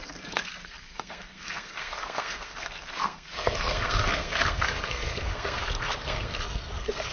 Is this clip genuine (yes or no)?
no